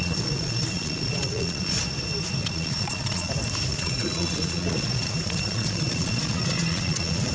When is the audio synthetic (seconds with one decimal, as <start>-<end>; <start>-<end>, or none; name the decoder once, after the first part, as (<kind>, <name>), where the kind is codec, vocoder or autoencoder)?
0.0-1.8 (vocoder, Vocos); 2.4-3.3; 3.7-7.3